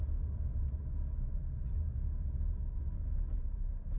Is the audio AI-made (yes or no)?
no